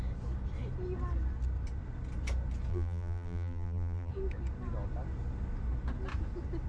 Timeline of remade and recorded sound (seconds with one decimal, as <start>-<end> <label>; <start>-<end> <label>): 0.0-2.7 recorded; 2.7-4.1 remade; 4.1-6.7 recorded